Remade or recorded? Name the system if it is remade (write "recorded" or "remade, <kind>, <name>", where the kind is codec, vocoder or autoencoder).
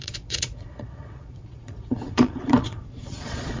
remade, vocoder, Vocos